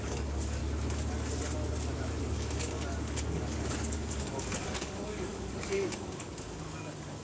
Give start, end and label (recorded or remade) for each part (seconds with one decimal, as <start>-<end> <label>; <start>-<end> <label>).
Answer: 0.0-0.6 remade; 0.6-2.2 recorded; 2.2-7.2 remade